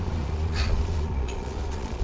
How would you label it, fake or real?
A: fake